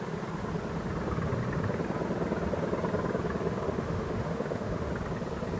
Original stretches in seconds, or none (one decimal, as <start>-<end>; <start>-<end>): 0.0-3.5; 4.9-5.6